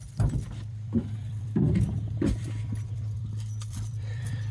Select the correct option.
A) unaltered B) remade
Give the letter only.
B